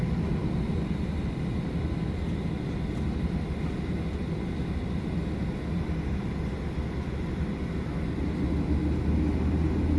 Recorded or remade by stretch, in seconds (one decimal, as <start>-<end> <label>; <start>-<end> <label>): 0.0-10.0 recorded